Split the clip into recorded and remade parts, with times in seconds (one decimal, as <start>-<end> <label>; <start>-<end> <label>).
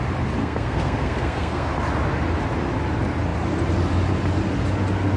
0.0-0.4 recorded; 0.4-1.7 remade; 1.7-5.2 recorded